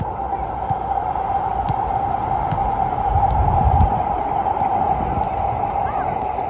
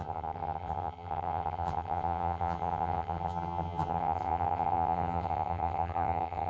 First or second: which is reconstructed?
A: second